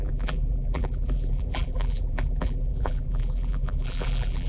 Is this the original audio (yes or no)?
no